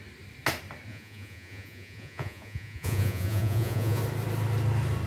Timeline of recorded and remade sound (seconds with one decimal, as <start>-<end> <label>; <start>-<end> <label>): 0.0-0.9 recorded; 0.9-4.0 remade; 4.0-5.1 recorded